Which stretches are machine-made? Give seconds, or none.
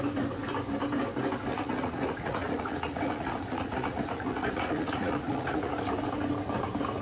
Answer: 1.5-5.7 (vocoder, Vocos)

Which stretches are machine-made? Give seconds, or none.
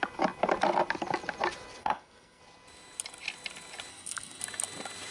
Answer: 1.8-2.4 (codec, SNAC); 3.9-4.4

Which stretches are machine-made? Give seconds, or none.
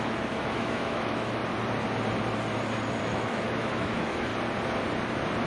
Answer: 0.0-1.4 (autoencoder, DAC-VAE); 3.0-4.3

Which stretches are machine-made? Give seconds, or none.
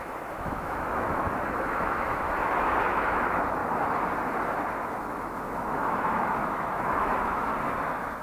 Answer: 0.0-3.6 (autoencoder, DAC-VAE); 5.0-7.5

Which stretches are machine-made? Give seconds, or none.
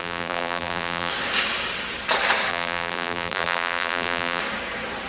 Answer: 0.0-1.1 (vocoder, BigVGAN v2); 2.5-4.4